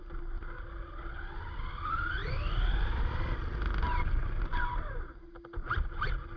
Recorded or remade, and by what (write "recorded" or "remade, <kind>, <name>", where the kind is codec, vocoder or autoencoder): recorded